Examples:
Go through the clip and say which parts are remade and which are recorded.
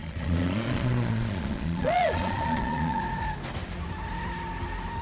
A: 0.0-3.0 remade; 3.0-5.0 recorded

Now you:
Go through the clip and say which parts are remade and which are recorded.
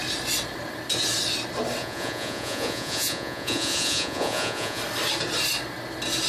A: 0.0-1.8 recorded; 1.8-4.8 remade; 4.8-6.3 recorded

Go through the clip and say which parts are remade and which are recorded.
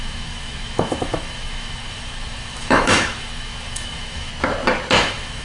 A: 0.0-4.3 remade; 4.3-5.0 recorded; 5.0-5.4 remade